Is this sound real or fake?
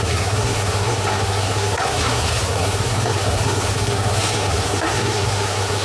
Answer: fake